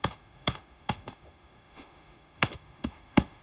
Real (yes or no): no